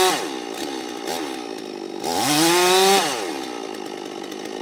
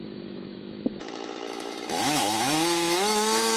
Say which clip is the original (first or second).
first